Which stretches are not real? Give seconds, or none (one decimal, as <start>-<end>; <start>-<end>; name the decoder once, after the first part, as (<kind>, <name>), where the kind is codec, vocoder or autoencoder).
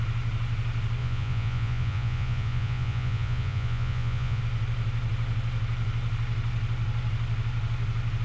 1.0-4.4 (vocoder, Vocos)